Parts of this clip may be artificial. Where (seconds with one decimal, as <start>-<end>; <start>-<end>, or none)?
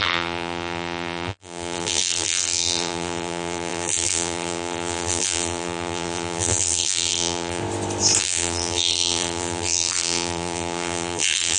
0.0-7.6; 8.2-11.6